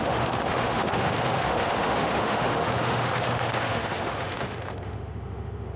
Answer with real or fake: fake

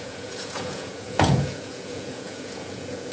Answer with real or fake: fake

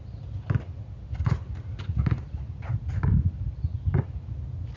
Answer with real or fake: real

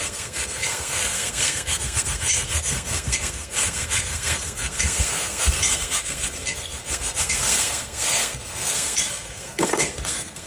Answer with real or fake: fake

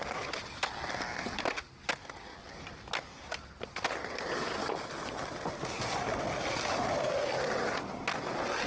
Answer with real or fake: real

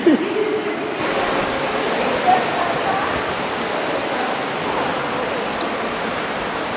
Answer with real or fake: real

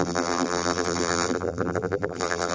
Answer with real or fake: fake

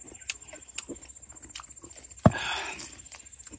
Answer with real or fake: real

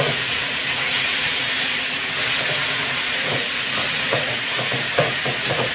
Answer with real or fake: fake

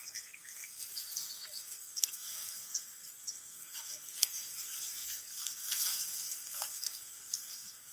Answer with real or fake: fake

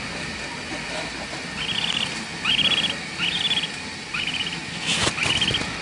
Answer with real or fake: real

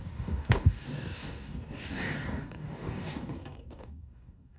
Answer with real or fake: fake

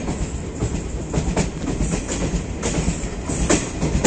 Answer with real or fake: real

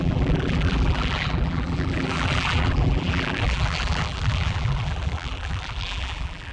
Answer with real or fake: fake